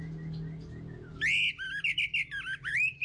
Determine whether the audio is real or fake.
real